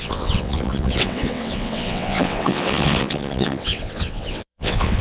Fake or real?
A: fake